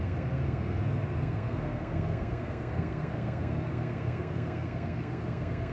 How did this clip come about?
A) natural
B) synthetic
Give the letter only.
B